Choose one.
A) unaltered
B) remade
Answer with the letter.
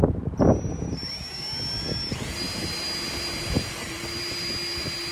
A